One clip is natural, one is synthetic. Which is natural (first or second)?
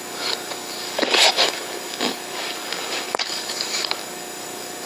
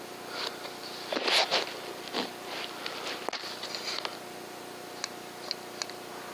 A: second